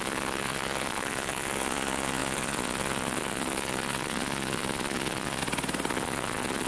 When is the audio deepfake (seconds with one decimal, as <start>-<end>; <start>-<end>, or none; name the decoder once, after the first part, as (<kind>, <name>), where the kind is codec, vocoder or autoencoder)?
0.0-5.4 (vocoder, Vocos); 5.9-6.7